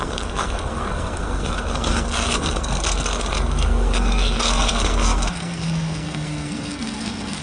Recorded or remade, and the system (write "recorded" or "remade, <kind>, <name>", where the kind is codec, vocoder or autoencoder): remade, codec, SNAC